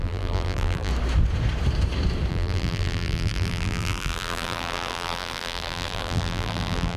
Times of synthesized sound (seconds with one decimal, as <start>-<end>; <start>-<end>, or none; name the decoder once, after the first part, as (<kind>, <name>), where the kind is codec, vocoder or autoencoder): 0.0-0.9 (vocoder, BigVGAN v2); 2.3-7.0